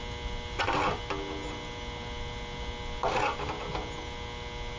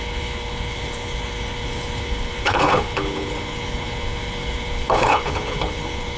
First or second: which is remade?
second